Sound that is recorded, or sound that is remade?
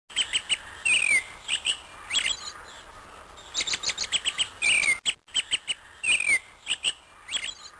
recorded